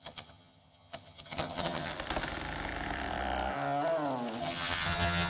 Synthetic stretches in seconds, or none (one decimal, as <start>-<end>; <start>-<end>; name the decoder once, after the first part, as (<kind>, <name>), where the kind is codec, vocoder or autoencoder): 0.0-1.9 (vocoder, HiFi-GAN); 4.4-5.3